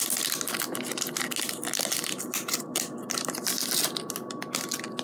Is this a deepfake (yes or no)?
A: no